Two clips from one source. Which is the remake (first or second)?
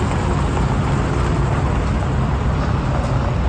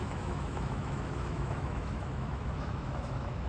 second